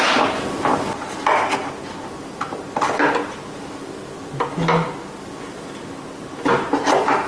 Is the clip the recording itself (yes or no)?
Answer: yes